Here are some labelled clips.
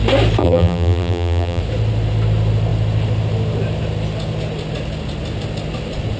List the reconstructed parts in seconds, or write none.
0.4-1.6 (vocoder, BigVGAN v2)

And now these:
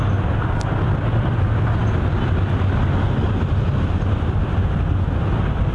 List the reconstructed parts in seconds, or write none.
none

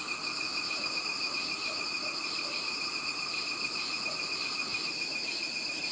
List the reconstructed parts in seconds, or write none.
0.5-4.0 (vocoder, BigVGAN v2); 4.7-5.9